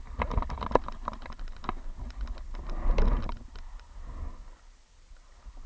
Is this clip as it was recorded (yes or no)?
yes